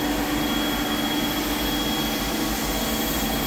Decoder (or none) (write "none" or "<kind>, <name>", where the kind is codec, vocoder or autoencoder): none